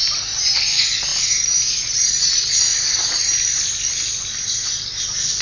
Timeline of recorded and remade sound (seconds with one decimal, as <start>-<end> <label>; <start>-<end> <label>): 0.0-2.7 recorded; 2.7-4.7 remade; 4.7-5.4 recorded